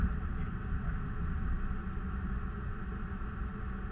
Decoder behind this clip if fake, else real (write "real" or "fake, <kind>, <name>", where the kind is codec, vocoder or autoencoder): real